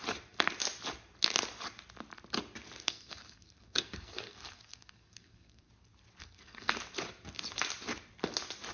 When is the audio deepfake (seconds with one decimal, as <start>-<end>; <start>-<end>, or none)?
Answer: 2.8-5.7; 6.2-6.7